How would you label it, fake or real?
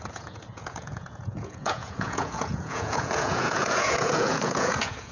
fake